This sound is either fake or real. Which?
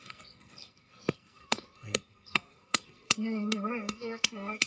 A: fake